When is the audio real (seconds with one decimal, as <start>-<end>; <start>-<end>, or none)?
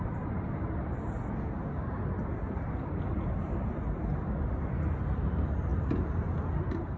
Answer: 0.0-7.0